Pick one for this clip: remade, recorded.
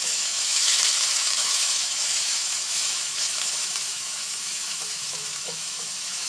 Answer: remade